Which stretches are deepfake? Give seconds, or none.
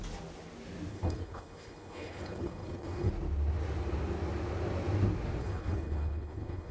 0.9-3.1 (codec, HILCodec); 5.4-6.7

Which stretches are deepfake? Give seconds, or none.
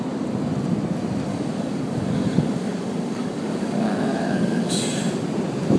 1.3-4.8 (codec, DAC)